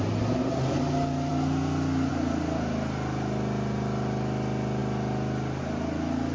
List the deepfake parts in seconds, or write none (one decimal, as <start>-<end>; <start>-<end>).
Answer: none